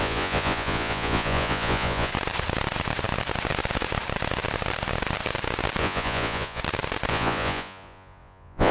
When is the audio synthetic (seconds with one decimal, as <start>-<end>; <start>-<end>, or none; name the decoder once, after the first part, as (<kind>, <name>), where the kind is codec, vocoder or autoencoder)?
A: 0.0-2.1 (vocoder, Vocos); 5.8-6.6; 7.1-8.7